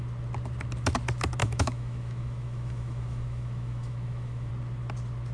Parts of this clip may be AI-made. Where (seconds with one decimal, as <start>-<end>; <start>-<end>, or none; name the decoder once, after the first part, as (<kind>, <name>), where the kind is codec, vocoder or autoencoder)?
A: 1.4-4.5 (autoencoder, DAC-VAE)